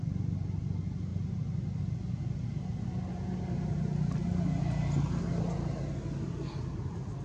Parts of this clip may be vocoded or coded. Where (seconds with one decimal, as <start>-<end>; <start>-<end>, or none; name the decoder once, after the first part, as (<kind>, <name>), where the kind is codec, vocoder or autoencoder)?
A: none